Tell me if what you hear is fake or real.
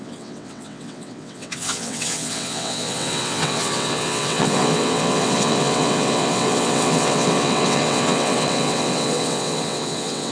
fake